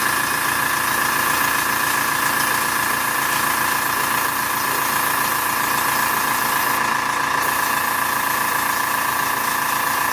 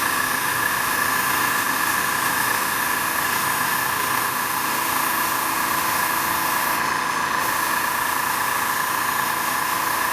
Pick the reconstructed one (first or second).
second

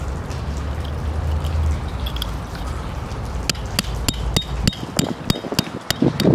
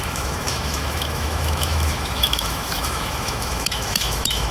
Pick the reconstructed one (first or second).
second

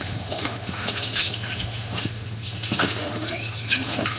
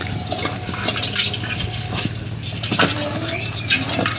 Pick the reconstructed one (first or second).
first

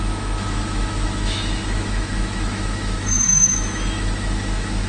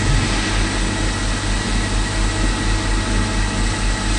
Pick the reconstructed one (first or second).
first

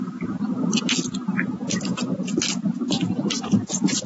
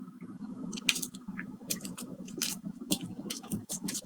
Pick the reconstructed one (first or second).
second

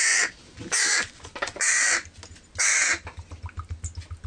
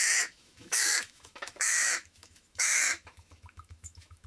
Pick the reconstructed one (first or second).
second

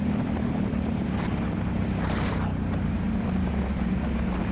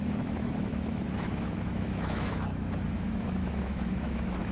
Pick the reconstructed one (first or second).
second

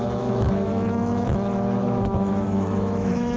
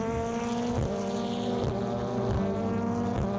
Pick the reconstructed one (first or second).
first